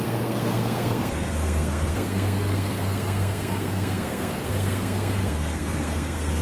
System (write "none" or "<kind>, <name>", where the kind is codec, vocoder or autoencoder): codec, SNAC